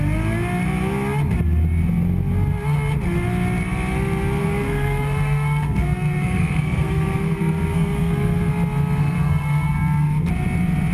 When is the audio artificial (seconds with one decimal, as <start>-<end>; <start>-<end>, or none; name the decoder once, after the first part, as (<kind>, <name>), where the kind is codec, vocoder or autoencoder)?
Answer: 4.4-8.5 (codec, SNAC); 9.0-10.3